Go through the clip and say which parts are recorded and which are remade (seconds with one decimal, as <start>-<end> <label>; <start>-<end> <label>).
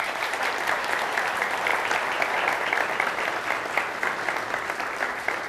0.0-1.7 remade; 1.7-5.0 recorded; 5.0-5.5 remade